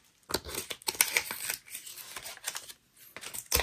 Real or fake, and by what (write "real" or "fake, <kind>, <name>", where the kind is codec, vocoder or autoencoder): real